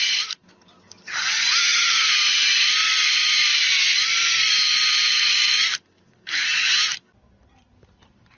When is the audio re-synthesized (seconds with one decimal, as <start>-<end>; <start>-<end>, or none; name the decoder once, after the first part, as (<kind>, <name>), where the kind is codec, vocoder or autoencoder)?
1.6-2.1 (vocoder, HiFi-GAN)